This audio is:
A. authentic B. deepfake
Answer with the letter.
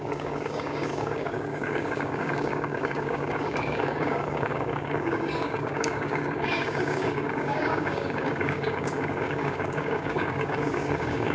B